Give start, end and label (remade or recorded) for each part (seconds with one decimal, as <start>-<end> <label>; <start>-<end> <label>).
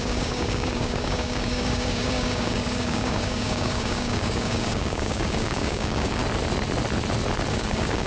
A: 0.0-6.2 remade; 6.2-7.5 recorded; 7.5-8.1 remade